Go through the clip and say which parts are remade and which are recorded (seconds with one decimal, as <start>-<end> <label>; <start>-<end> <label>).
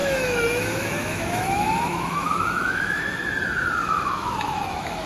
0.0-3.1 remade; 3.1-3.8 recorded; 3.8-5.1 remade